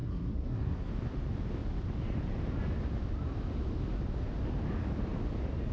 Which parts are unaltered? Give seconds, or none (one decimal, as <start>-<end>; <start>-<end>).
0.9-5.7